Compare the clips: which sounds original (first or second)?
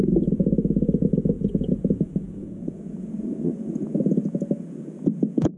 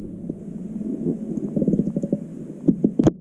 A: second